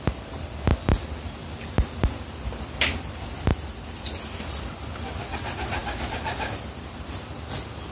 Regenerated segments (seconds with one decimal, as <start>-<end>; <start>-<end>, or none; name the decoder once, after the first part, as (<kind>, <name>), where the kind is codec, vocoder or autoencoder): 3.5-4.4 (vocoder, BigVGAN v2); 5.8-7.2

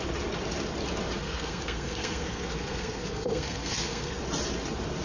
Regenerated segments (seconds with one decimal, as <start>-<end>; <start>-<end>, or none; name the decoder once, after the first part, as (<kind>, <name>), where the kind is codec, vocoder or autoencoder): 1.2-4.2 (codec, SNAC)

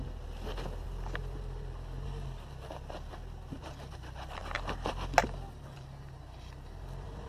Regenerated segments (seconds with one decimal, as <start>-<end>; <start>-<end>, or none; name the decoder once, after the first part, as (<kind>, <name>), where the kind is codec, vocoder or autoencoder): none

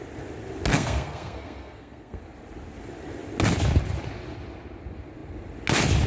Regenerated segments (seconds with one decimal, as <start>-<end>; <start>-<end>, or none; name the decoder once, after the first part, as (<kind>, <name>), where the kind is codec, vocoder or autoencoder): 0.7-2.2 (codec, SNAC)

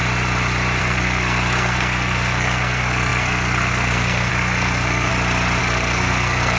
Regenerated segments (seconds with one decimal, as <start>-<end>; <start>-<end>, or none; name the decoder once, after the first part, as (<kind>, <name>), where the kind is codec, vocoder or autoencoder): 0.8-5.1 (codec, SNAC); 5.6-6.6